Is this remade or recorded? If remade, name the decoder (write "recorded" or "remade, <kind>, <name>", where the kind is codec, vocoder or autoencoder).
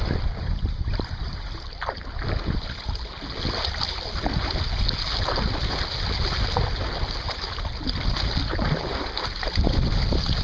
recorded